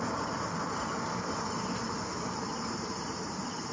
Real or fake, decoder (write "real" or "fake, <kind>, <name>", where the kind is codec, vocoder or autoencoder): fake, vocoder, BigVGAN v2